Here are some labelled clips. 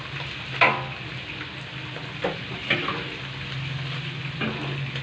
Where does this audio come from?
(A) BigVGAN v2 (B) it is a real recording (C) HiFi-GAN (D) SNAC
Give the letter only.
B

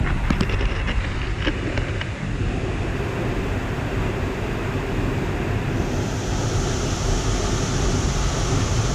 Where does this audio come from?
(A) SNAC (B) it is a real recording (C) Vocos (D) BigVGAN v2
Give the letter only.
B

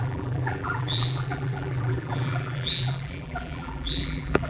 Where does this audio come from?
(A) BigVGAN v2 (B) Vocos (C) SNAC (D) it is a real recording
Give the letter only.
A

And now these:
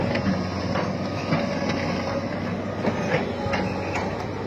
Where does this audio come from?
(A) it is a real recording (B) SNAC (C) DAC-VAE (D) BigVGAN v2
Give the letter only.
A